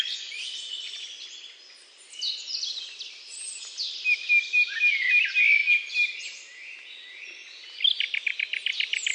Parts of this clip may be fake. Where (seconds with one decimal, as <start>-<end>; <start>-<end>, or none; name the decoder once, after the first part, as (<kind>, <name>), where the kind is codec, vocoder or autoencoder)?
none